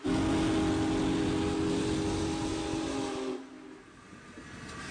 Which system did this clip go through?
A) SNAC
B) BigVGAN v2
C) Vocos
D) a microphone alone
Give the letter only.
D